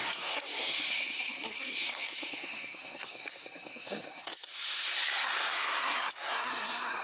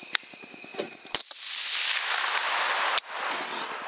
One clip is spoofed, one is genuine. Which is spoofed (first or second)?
first